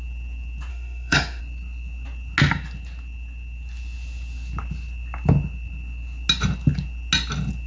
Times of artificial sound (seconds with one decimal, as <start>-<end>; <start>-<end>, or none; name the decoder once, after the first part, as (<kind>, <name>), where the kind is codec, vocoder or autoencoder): 0.7-1.4 (autoencoder, DAC-VAE)